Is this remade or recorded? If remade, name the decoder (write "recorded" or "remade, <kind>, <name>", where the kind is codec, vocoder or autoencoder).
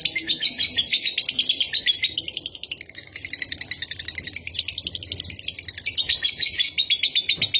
recorded